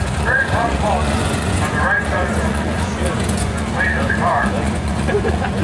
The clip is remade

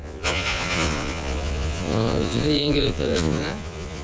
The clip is remade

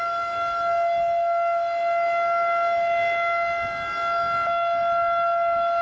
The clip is recorded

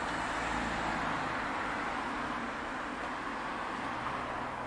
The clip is recorded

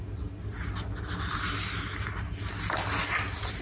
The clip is recorded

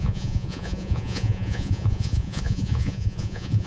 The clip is remade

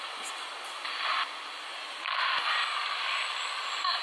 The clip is recorded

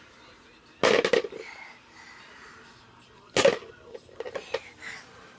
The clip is recorded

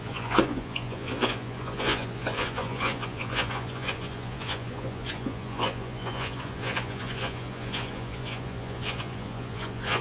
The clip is remade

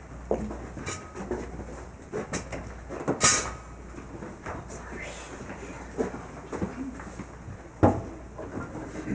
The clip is recorded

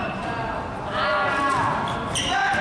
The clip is recorded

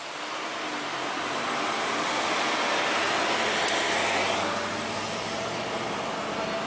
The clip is recorded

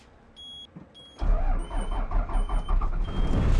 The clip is recorded